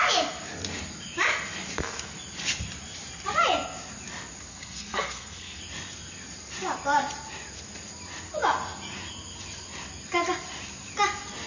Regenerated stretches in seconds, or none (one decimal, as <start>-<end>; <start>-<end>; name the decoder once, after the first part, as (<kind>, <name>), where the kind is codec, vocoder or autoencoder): 4.5-5.6 (codec, SNAC)